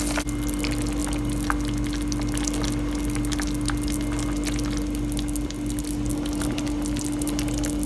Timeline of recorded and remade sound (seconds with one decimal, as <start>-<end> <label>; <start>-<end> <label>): 0.0-7.9 recorded